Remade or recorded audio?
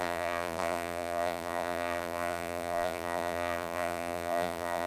remade